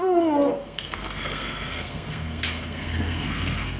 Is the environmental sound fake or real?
fake